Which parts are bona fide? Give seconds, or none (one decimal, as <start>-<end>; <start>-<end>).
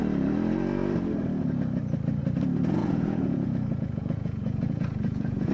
0.0-2.8